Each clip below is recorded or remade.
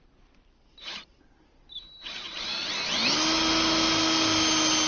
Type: recorded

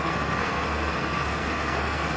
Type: remade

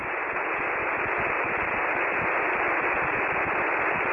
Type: recorded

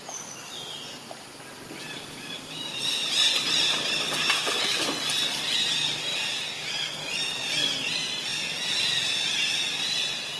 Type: recorded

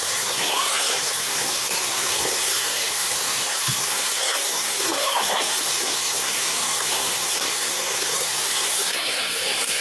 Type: remade